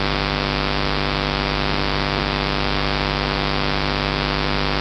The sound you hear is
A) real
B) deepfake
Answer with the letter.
A